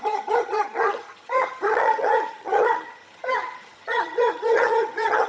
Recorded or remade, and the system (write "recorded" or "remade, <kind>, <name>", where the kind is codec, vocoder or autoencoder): remade, vocoder, HiFi-GAN